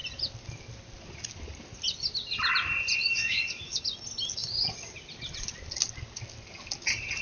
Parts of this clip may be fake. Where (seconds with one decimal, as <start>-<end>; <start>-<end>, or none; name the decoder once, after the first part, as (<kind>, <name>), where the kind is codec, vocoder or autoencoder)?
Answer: 3.0-3.8 (codec, DAC)

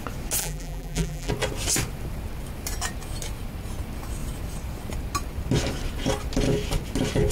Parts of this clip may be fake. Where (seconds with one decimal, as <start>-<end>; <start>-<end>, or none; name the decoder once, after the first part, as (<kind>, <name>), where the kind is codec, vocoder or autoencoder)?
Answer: 0.4-1.3 (vocoder, BigVGAN v2)

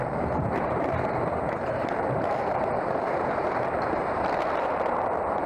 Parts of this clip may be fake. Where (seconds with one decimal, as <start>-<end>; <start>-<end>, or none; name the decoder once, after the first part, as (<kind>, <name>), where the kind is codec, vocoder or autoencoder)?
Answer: 0.0-5.5 (vocoder, BigVGAN v2)

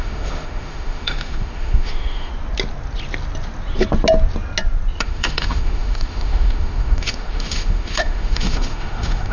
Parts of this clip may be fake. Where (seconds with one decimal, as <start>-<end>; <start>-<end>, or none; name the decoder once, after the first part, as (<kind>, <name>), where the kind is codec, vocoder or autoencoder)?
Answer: 0.0-2.3 (autoencoder, DAC-VAE); 5.0-9.3